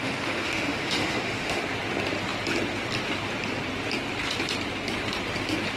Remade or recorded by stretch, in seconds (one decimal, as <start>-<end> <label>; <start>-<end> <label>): 0.0-1.6 remade; 1.6-5.8 recorded